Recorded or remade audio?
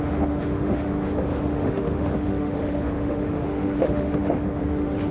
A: remade